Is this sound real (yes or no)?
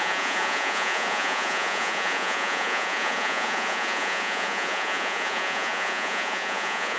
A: no